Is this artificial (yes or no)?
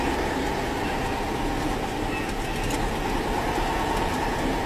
no